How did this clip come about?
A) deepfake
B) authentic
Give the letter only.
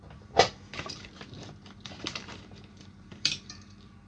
A